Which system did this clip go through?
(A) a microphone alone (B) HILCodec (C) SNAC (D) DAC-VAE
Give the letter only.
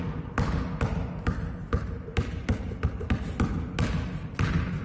A